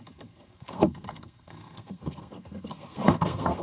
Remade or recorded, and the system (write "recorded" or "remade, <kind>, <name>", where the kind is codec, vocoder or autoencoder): remade, codec, SNAC